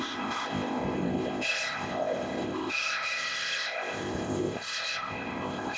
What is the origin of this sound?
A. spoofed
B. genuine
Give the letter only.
A